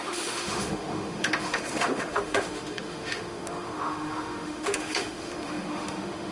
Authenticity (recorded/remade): remade